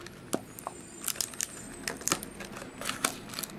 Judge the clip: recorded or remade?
recorded